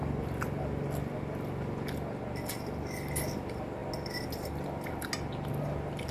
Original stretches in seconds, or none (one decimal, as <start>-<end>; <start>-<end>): 0.0-6.1